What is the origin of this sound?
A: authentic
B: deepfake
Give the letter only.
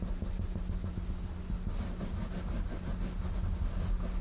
A